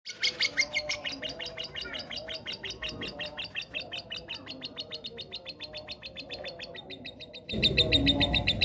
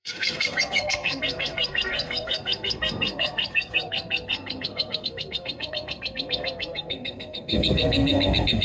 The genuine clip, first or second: first